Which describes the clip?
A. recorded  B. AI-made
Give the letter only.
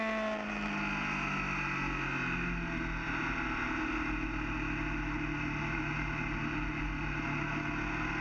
A